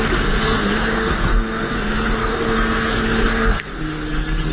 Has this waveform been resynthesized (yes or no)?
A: yes